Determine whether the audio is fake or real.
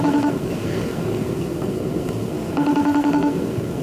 fake